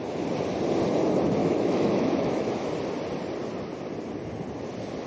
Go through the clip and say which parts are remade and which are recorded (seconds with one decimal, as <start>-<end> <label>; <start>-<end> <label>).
0.0-1.4 recorded; 1.4-2.7 remade; 2.7-5.1 recorded